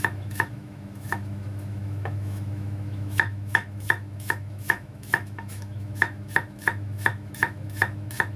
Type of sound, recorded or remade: remade